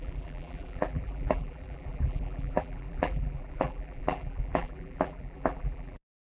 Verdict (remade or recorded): remade